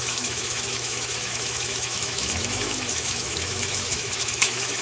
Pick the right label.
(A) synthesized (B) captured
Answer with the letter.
A